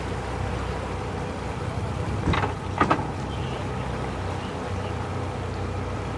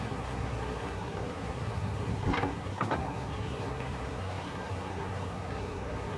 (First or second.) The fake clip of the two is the second